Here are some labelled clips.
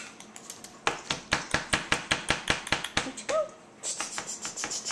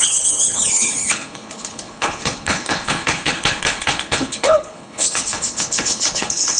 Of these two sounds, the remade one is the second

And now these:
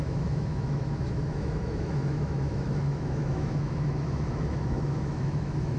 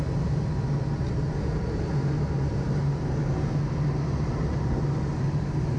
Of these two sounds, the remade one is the first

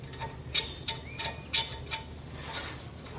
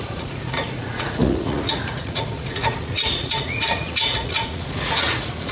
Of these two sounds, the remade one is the second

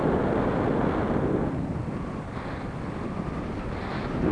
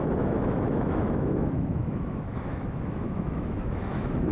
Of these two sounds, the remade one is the second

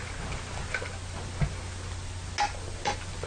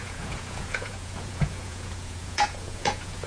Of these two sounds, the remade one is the second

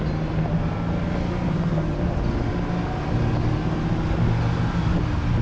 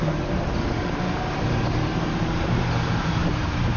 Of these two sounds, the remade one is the second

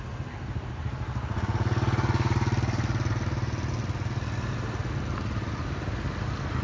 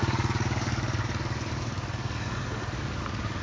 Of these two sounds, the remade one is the second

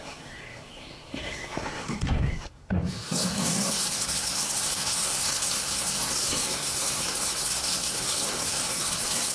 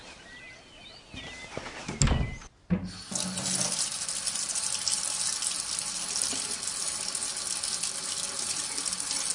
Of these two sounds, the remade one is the first